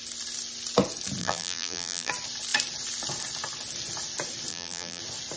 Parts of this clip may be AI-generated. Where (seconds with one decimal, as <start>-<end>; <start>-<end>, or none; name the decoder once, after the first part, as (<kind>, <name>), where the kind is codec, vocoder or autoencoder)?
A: 1.2-2.1 (vocoder, BigVGAN v2); 4.5-5.0